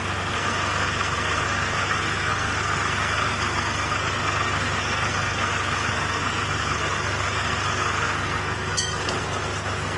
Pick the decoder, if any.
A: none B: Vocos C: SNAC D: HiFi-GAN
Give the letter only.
C